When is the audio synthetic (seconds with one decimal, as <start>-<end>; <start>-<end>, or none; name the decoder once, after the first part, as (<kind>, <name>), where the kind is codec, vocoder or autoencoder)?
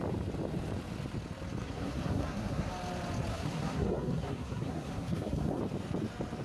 1.6-2.7 (codec, SNAC); 3.3-5.6